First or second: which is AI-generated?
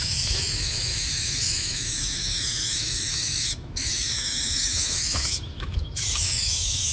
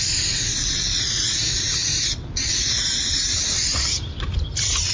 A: first